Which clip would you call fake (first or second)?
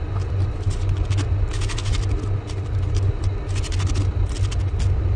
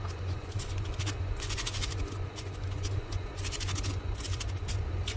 second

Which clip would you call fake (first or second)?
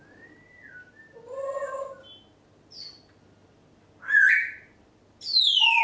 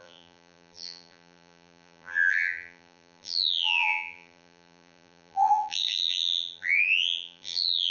second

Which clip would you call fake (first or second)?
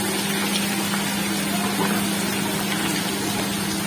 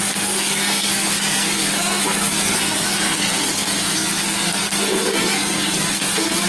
second